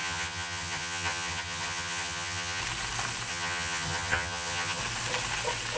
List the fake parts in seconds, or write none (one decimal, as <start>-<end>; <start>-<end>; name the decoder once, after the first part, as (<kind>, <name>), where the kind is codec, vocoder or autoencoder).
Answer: 0.0-2.6 (vocoder, HiFi-GAN); 3.3-4.8